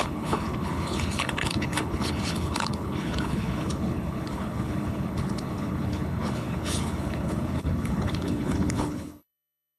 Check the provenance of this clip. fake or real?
fake